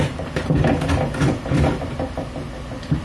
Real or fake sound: real